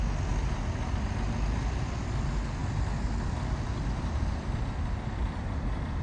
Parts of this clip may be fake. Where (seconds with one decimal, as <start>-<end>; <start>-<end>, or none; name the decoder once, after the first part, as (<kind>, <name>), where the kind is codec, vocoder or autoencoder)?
none